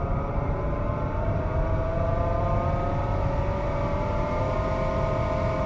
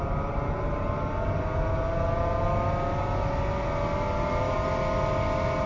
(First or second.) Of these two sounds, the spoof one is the first